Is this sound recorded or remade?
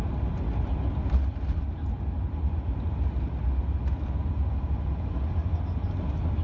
recorded